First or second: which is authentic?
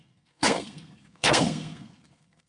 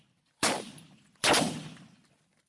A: second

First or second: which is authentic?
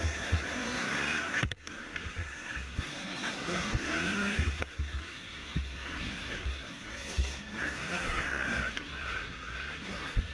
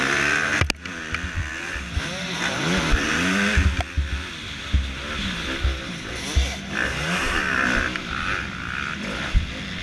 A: second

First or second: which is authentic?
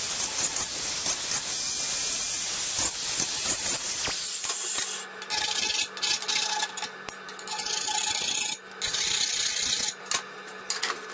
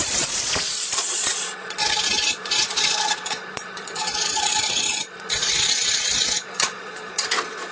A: first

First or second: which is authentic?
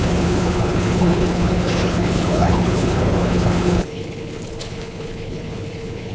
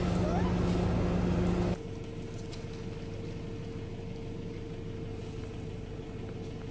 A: second